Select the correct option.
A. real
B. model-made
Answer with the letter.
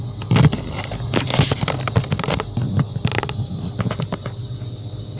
A